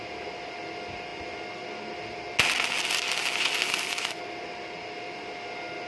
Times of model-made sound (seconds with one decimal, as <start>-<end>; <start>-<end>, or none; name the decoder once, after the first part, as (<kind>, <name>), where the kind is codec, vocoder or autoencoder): none